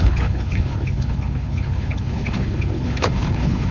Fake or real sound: fake